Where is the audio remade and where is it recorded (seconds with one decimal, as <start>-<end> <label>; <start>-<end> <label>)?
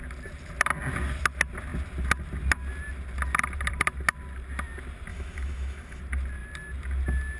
0.0-5.1 recorded; 5.1-6.0 remade; 6.0-7.4 recorded